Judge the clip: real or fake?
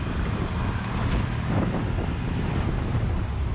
real